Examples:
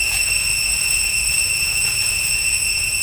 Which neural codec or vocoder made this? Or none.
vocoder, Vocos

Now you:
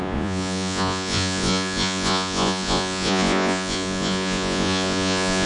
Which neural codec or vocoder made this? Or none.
vocoder, Vocos